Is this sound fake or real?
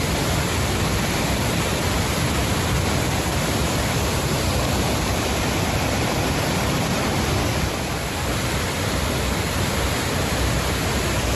fake